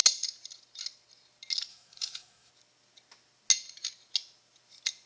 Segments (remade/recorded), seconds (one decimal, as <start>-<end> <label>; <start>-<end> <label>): 0.0-1.7 recorded; 1.7-2.5 remade; 2.5-5.1 recorded